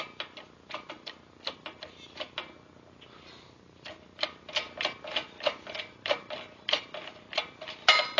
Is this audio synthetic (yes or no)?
no